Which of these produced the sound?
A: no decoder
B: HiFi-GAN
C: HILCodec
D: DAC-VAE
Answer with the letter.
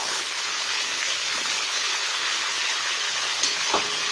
C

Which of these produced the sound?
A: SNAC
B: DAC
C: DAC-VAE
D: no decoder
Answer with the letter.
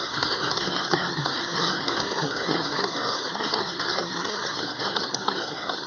A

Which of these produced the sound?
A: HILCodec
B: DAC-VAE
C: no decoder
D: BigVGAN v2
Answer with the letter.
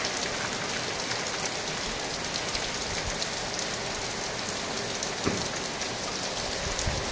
C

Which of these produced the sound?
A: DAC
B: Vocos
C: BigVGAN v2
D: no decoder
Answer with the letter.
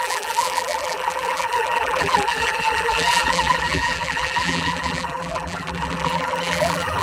C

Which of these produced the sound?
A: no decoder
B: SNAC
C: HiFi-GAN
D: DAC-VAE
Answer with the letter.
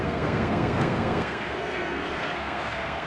B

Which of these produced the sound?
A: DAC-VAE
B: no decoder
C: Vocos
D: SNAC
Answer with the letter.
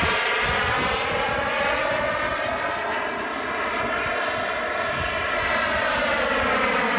B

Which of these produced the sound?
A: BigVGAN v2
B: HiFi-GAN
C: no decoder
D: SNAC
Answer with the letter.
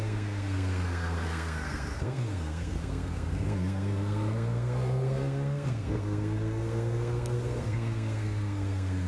D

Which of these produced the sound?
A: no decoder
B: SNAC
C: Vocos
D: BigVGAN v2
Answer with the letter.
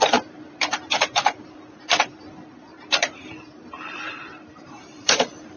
D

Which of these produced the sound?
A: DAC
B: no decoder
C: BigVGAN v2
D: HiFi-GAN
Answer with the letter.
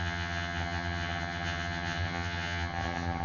D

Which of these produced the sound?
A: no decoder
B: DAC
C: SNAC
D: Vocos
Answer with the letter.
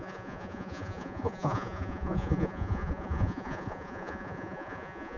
D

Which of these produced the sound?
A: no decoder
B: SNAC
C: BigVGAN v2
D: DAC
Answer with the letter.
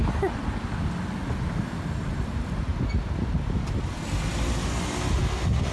A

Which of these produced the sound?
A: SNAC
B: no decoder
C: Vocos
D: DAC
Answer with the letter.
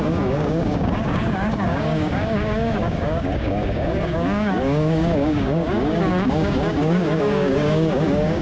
D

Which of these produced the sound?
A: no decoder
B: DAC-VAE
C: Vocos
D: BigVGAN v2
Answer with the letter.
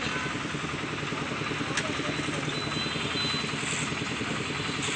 A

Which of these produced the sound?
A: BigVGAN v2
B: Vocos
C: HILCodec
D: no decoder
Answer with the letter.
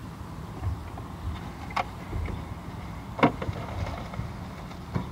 D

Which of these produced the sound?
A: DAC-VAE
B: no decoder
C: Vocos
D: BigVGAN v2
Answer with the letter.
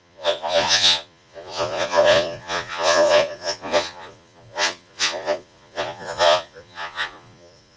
C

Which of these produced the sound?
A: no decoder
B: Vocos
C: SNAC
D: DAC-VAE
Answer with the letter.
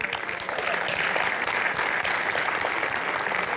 A